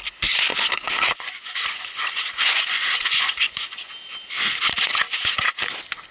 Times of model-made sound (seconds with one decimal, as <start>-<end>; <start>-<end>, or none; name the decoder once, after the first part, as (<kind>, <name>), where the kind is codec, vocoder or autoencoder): 0.5-3.9 (vocoder, Vocos)

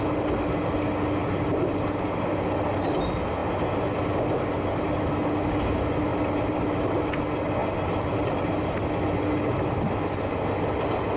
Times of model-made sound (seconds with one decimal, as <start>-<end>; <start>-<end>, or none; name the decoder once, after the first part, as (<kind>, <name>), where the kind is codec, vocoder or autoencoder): 6.1-7.0 (vocoder, BigVGAN v2); 7.6-8.9

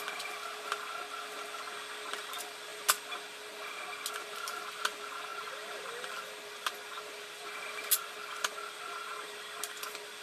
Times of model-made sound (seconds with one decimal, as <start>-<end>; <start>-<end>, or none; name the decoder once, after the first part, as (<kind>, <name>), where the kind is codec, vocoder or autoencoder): none